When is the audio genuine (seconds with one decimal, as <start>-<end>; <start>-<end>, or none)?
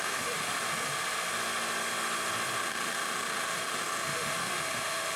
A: 0.6-2.6